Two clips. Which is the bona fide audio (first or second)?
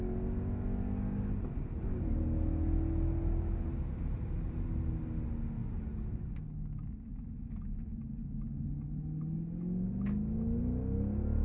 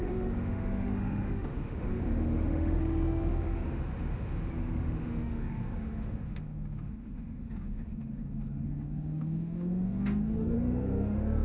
first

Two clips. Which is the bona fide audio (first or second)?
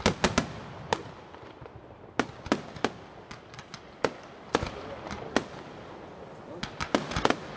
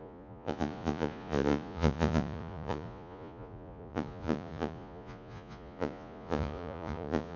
first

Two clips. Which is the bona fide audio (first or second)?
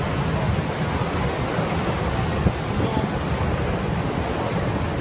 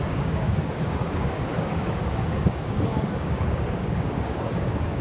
first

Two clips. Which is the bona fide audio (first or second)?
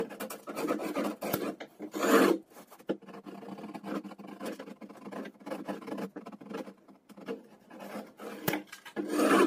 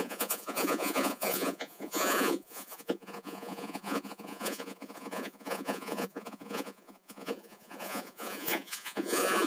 first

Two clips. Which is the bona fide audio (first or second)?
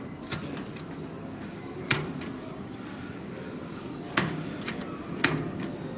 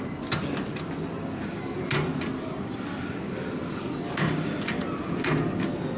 second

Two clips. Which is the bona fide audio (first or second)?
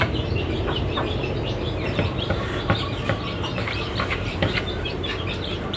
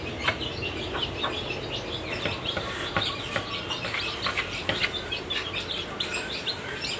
second